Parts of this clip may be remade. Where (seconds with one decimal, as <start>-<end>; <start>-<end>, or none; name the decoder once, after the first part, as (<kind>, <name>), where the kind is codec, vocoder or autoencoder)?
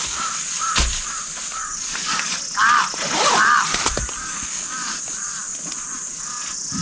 1.6-2.3 (codec, DAC); 4.2-5.0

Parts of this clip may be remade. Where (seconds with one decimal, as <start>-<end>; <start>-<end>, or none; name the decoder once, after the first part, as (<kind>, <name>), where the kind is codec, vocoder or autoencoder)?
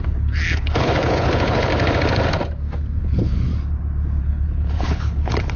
0.0-1.7 (codec, HILCodec); 3.0-3.5; 4.2-5.6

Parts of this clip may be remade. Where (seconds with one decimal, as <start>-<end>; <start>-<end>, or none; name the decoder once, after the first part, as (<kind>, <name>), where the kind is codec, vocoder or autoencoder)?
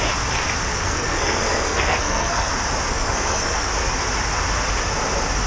0.7-2.5 (codec, SNAC); 2.9-3.7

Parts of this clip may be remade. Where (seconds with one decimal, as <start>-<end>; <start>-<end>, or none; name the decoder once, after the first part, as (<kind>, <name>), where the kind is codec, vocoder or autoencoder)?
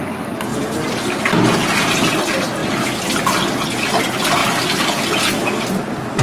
none